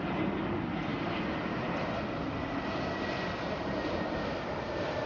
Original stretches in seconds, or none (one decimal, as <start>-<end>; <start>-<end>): 0.0-5.1